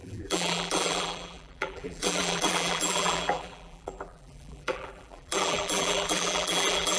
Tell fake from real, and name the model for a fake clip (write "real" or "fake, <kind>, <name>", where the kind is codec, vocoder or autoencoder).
fake, vocoder, BigVGAN v2